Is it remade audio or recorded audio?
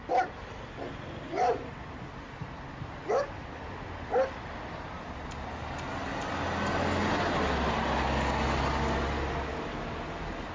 recorded